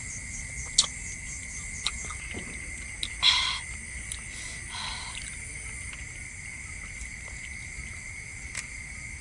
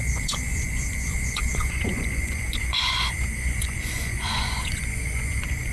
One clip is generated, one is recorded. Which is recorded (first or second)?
first